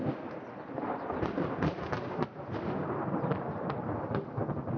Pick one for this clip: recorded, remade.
recorded